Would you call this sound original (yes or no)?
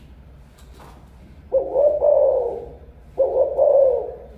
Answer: yes